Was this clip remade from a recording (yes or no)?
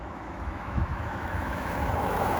yes